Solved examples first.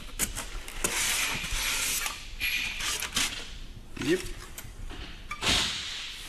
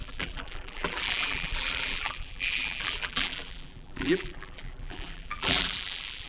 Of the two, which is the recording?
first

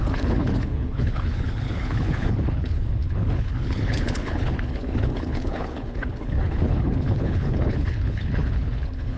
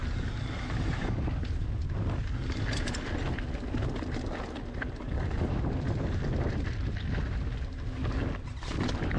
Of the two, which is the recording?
second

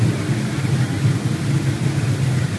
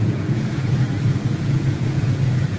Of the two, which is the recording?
first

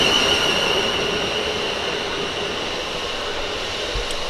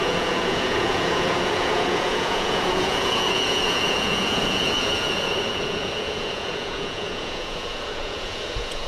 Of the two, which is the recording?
first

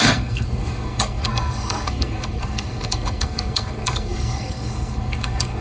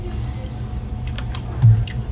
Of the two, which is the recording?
second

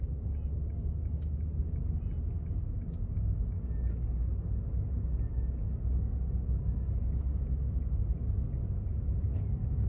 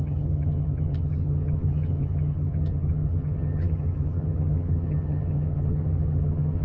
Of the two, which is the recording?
first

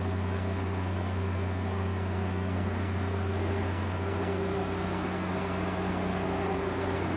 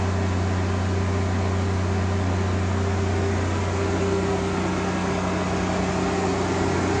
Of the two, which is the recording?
second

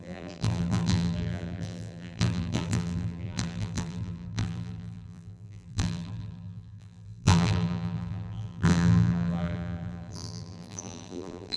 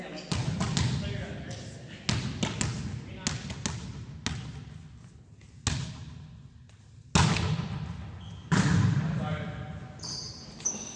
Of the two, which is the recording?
second